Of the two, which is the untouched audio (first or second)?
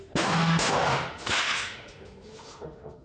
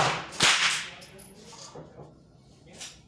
second